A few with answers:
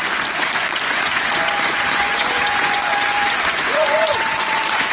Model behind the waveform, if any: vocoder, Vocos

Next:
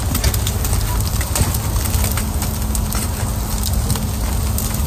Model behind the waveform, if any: none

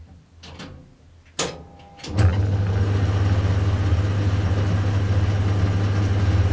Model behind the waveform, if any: none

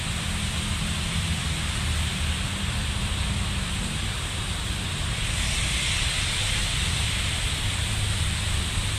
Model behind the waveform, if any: none